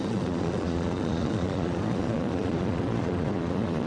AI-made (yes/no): yes